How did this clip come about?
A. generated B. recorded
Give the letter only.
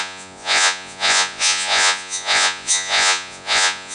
A